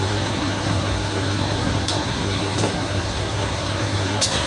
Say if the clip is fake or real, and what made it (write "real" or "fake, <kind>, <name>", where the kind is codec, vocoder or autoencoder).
fake, codec, SNAC